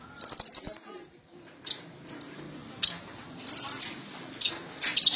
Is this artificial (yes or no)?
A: no